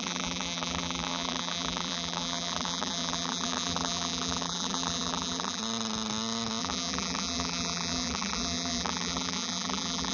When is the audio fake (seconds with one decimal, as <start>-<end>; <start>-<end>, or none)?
0.0-5.6; 6.6-10.1